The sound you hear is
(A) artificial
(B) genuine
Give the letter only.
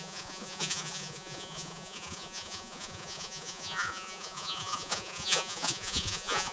A